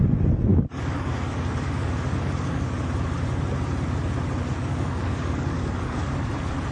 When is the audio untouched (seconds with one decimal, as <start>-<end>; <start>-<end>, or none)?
0.0-0.5; 2.8-4.4; 6.3-6.7

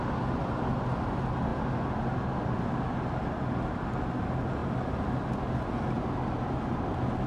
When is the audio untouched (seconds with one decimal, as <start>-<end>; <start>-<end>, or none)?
0.0-7.3